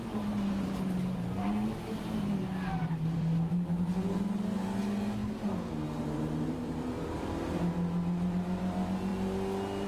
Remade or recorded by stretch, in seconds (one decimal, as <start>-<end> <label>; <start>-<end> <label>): 0.0-4.8 remade; 4.8-5.2 recorded; 5.2-7.7 remade; 7.7-9.9 recorded